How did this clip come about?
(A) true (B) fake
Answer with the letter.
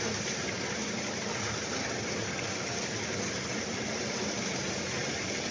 A